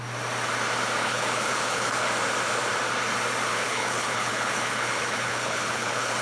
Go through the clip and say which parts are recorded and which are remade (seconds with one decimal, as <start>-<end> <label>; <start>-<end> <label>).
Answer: 0.0-1.0 recorded; 1.0-2.1 remade; 2.1-3.5 recorded; 3.5-6.2 remade